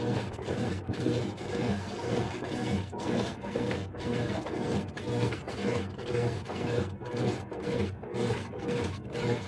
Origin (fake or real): fake